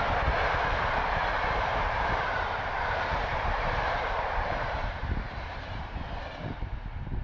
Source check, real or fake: fake